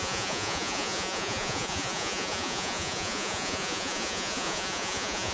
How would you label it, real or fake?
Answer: fake